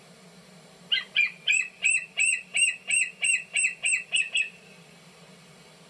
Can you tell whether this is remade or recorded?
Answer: recorded